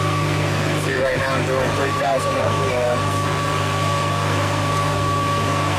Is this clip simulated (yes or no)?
yes